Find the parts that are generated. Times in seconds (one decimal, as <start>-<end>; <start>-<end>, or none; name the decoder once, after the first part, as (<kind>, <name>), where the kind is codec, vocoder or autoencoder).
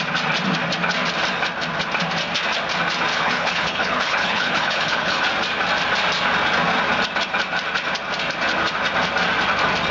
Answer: 3.1-5.2 (codec, HILCodec)